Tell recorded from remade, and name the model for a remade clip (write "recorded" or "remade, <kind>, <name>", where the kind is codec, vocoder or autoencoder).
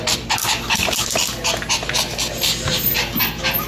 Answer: recorded